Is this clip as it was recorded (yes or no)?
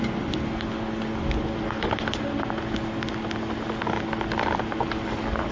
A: yes